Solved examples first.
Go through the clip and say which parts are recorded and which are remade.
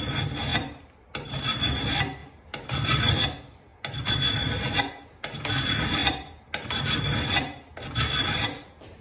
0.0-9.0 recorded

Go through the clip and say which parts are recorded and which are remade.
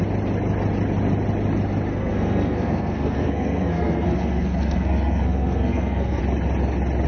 0.0-1.9 recorded; 1.9-6.2 remade; 6.2-7.1 recorded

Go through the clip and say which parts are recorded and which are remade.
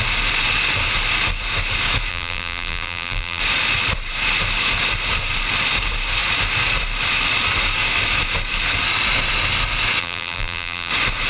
0.0-2.1 recorded; 2.1-3.4 remade; 3.4-10.0 recorded; 10.0-10.9 remade; 10.9-11.3 recorded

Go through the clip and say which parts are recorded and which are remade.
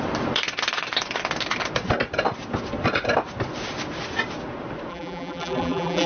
0.0-4.9 recorded; 4.9-6.1 remade